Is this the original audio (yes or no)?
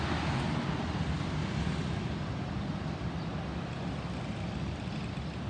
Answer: yes